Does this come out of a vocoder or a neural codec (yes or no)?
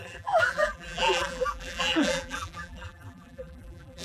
yes